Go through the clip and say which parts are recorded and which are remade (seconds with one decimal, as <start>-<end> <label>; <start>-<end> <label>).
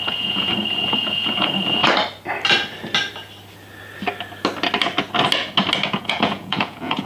0.0-1.8 remade; 1.8-5.9 recorded; 5.9-7.1 remade